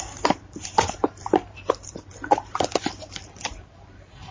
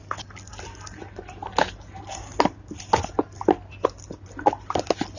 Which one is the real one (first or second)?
second